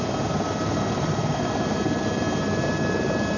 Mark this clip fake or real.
real